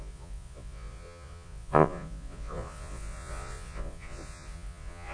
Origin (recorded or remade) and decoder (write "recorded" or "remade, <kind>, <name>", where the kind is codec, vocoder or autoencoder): remade, vocoder, Vocos